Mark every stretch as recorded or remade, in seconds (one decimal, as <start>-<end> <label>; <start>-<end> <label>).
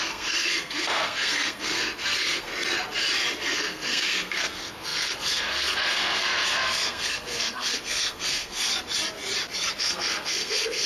0.0-2.5 remade; 2.5-3.4 recorded; 3.4-8.7 remade; 8.7-9.8 recorded; 9.8-10.9 remade